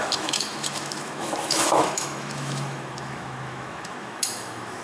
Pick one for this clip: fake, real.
fake